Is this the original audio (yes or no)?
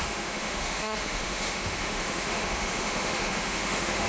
no